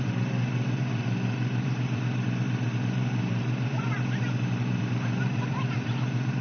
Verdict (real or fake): fake